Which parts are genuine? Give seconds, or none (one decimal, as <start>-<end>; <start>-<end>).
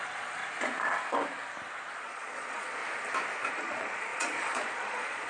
0.4-1.9; 2.8-3.5